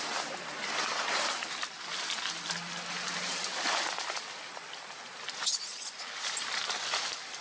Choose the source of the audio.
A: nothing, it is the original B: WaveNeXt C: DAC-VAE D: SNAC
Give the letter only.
A